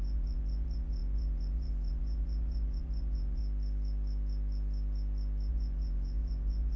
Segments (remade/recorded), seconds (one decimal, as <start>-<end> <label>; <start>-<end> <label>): 0.0-3.4 remade; 3.4-5.5 recorded; 5.5-6.8 remade